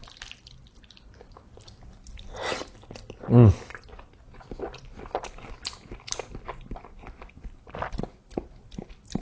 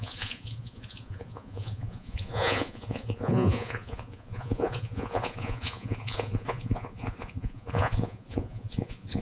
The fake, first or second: second